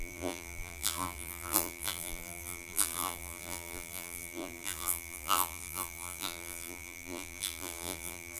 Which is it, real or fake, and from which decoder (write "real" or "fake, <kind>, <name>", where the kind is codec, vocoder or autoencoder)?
fake, vocoder, BigVGAN v2